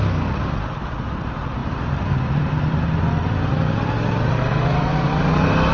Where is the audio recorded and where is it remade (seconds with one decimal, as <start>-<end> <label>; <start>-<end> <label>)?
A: 0.0-5.7 recorded